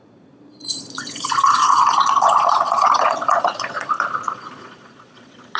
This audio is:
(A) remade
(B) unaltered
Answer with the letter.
A